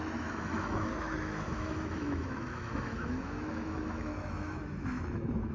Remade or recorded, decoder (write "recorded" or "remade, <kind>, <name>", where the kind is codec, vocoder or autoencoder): remade, autoencoder, DAC-VAE